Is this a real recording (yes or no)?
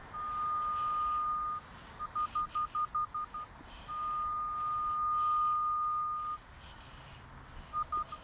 yes